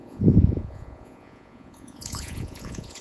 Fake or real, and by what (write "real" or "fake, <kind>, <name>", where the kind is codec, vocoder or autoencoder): fake, vocoder, Vocos